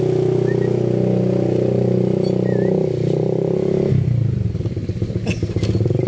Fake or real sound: real